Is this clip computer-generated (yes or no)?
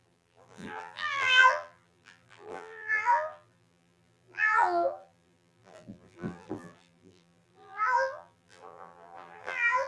yes